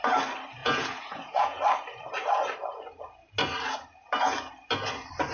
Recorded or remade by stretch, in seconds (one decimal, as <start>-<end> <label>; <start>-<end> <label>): 0.0-0.6 recorded; 0.6-1.6 remade; 1.6-5.3 recorded